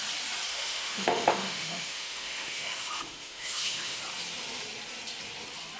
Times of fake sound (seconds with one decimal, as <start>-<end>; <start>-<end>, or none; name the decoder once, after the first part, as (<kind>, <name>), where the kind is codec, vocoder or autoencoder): 0.5-4.0 (autoencoder, DAC-VAE)